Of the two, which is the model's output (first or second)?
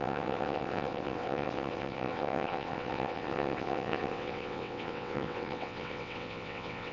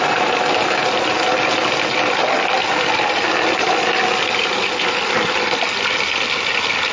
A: first